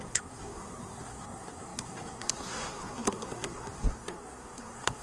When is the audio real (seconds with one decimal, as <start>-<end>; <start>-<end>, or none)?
none